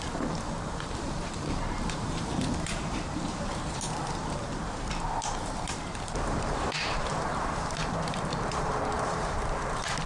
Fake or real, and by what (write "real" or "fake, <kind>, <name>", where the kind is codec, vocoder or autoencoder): fake, vocoder, BigVGAN v2